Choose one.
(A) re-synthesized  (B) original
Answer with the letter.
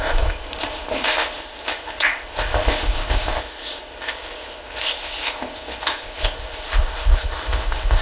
A